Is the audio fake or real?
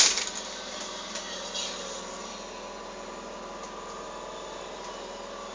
real